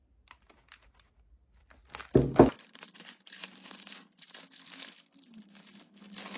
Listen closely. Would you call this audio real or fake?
real